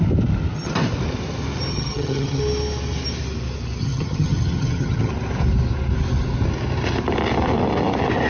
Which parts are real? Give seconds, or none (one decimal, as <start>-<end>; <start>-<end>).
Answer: 0.0-1.7; 2.4-3.8; 5.1-8.3